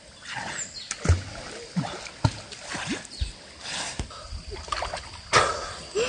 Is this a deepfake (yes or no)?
no